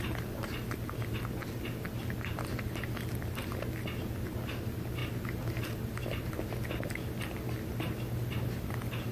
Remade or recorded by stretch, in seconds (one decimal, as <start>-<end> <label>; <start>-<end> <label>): 0.0-9.1 recorded